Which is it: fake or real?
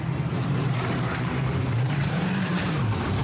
fake